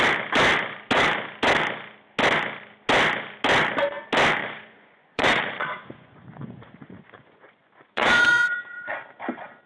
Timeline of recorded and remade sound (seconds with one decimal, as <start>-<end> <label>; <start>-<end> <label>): 0.0-4.4 recorded; 4.4-9.0 remade; 9.0-9.7 recorded